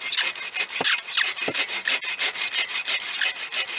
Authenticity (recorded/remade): recorded